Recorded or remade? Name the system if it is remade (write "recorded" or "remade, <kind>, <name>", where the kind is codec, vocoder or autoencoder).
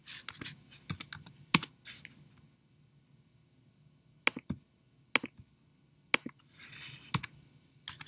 recorded